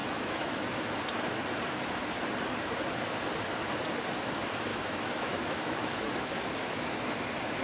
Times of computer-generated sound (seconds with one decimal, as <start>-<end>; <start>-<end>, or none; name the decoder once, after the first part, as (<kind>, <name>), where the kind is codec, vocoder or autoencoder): 0.0-0.8 (autoencoder, DAC-VAE); 4.7-7.0

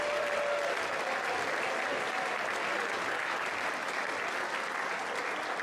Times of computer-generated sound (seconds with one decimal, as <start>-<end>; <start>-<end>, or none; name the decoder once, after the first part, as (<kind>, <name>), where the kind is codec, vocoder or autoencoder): none